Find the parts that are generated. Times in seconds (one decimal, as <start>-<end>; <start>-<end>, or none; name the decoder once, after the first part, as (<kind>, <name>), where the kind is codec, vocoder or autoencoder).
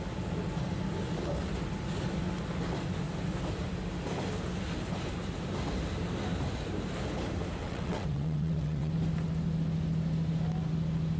7.6-8.9 (vocoder, WaveNeXt)